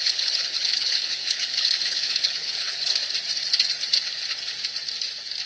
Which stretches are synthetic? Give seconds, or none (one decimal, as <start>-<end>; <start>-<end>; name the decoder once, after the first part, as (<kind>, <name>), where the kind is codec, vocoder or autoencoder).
0.0-3.0 (codec, HILCodec)